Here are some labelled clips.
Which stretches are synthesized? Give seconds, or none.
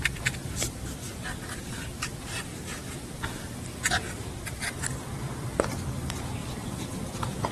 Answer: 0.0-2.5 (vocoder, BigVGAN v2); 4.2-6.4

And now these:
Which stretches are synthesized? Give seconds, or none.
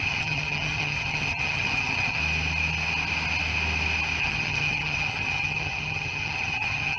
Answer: 0.0-2.2 (vocoder, HiFi-GAN); 4.2-7.0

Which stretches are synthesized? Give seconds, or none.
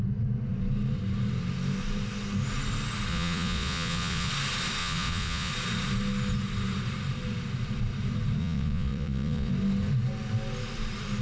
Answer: 3.1-4.3 (vocoder, Vocos); 4.8-5.5; 8.4-9.5